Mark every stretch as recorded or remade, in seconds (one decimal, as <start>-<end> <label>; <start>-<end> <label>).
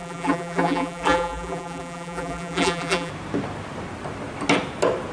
0.0-3.1 remade; 3.1-5.1 recorded